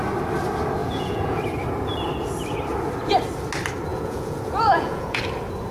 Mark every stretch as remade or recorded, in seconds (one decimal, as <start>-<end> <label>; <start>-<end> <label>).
0.0-0.8 recorded; 0.8-1.4 remade; 1.4-3.9 recorded; 3.9-5.2 remade; 5.2-5.7 recorded